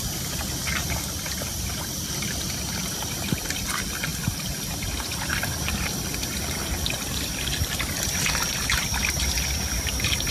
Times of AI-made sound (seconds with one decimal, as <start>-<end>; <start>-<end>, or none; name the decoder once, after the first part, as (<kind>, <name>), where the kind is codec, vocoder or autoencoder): none